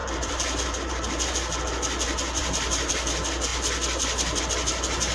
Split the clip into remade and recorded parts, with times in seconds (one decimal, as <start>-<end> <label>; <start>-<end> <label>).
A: 0.0-1.3 remade; 1.3-2.4 recorded; 2.4-2.9 remade; 2.9-5.1 recorded